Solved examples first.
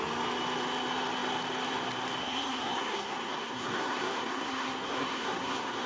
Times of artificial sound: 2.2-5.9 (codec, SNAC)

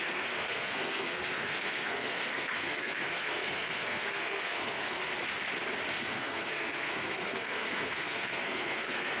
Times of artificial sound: 0.0-5.1 (codec, SNAC); 5.9-9.2

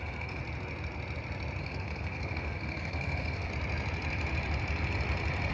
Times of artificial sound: 0.0-0.4 (codec, SNAC); 1.6-3.5

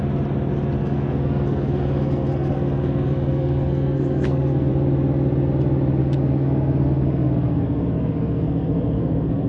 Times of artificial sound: 0.8-4.7 (codec, SNAC); 6.0-9.5

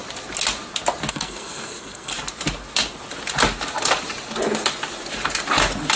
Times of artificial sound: 1.1-2.1 (codec, SNAC)

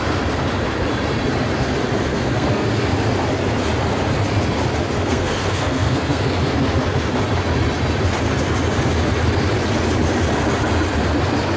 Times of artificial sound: 2.1-2.7 (codec, SNAC); 5.0-6.2